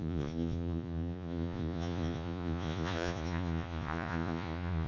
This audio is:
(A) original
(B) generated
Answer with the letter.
B